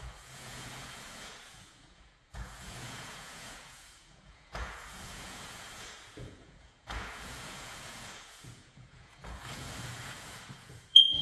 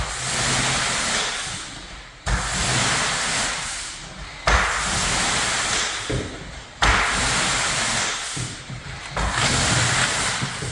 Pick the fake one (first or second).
first